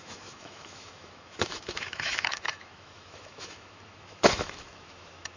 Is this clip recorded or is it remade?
remade